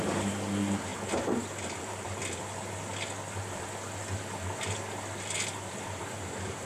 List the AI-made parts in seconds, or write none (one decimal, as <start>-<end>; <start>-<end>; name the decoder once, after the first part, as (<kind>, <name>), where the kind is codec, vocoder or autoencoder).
0.0-0.9 (vocoder, BigVGAN v2); 1.8-2.2; 6.1-6.7